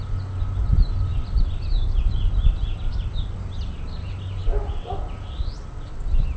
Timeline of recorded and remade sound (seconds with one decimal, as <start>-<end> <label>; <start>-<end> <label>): 0.0-1.1 recorded; 1.1-3.2 remade; 3.2-6.4 recorded